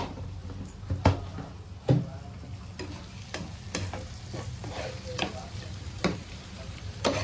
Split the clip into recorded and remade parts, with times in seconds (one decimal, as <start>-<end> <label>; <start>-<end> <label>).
0.0-0.4 remade; 0.4-4.7 recorded; 4.7-7.2 remade